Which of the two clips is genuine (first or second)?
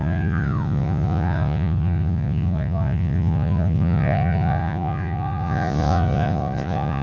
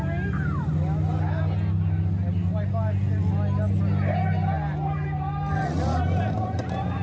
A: second